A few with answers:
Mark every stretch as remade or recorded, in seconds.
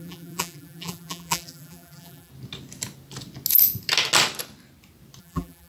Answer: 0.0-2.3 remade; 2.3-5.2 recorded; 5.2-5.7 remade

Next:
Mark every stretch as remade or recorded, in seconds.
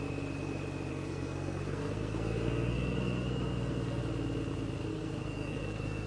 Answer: 0.0-0.9 recorded; 0.9-4.0 remade; 4.0-4.9 recorded; 4.9-6.1 remade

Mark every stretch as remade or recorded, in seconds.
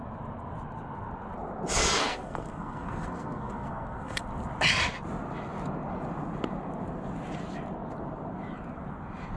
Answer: 0.0-1.8 recorded; 1.8-4.2 remade; 4.2-9.4 recorded